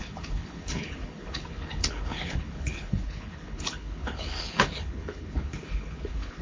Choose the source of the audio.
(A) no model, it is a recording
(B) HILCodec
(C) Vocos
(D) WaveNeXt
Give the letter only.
B